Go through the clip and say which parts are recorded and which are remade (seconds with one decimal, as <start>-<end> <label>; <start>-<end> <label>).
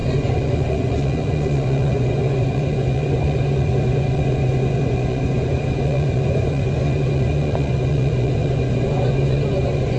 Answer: 0.0-10.0 remade